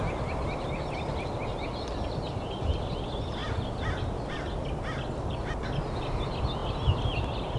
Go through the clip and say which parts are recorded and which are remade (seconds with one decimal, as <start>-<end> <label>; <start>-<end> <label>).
0.0-7.6 recorded